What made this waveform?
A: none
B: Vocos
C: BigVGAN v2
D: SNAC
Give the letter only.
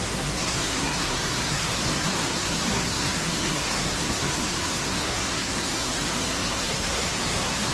D